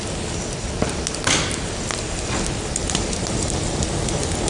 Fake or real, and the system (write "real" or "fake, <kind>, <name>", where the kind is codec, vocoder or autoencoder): real